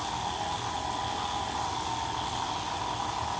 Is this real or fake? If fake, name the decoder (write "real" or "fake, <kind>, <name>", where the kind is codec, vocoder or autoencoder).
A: real